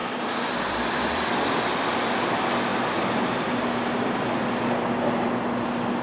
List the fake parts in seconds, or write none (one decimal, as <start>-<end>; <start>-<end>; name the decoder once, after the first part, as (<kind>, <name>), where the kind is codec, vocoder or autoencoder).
0.0-1.6 (vocoder, BigVGAN v2); 2.7-3.6